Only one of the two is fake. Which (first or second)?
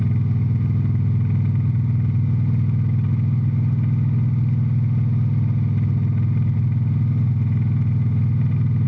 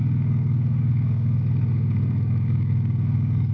second